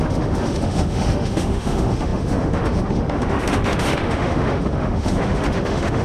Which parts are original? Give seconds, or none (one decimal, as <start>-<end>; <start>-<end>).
none